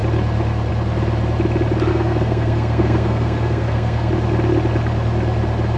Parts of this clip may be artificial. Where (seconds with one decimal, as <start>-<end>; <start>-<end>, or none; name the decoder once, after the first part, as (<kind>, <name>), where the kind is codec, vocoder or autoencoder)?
1.9-4.1 (codec, SNAC)